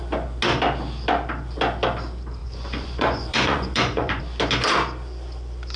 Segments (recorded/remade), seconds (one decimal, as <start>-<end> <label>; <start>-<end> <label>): 0.0-2.4 recorded; 2.4-4.2 remade; 4.2-5.8 recorded